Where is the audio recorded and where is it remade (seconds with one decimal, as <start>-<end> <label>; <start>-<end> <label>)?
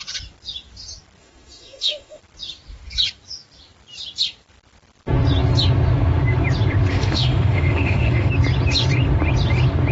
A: 0.0-1.2 recorded; 1.2-2.2 remade; 2.2-6.9 recorded; 6.9-8.3 remade; 8.3-9.9 recorded